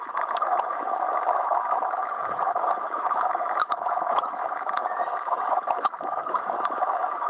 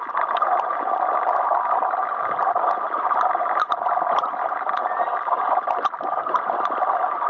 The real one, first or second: second